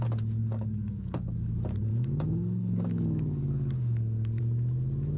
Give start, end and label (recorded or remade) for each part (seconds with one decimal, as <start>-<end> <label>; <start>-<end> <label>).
0.0-0.4 recorded; 0.4-1.5 remade; 1.5-1.9 recorded; 1.9-4.4 remade; 4.4-5.2 recorded